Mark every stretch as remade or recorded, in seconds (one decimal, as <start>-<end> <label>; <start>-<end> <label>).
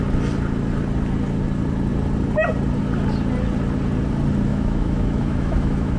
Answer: 0.0-4.5 recorded; 4.5-6.0 remade